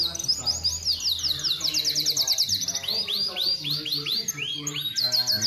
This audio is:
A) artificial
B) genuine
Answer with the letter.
B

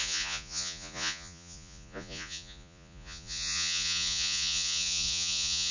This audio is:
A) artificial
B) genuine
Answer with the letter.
A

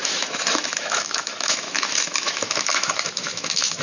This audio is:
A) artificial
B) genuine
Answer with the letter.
A